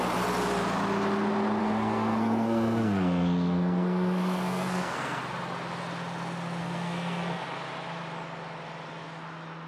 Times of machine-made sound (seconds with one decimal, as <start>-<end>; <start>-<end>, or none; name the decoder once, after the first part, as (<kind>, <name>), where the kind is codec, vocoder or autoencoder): 1.6-5.2 (codec, SNAC); 6.6-7.4

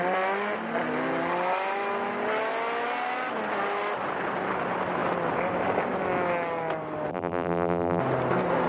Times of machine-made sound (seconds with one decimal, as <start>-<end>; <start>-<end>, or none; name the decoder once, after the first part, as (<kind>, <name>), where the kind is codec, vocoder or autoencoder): 7.1-8.0 (vocoder, BigVGAN v2)

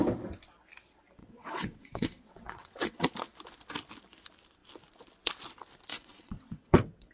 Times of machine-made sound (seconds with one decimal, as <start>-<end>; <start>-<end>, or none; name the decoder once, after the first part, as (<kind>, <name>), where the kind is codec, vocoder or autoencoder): 1.2-3.1 (vocoder, WaveNeXt); 5.9-7.1